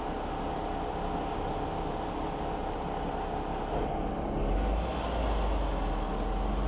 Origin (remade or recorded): recorded